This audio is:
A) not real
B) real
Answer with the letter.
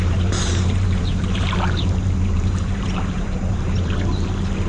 A